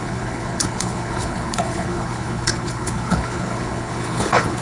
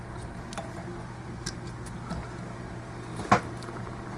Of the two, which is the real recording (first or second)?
second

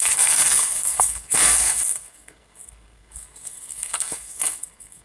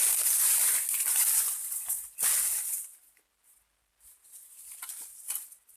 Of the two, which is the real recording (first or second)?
second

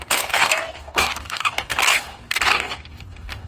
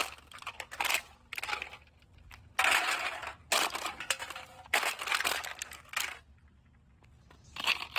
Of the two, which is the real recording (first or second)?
second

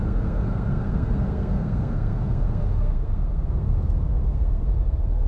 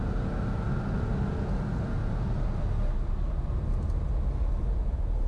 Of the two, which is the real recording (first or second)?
second